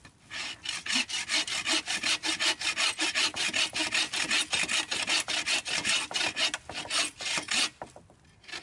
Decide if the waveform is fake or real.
real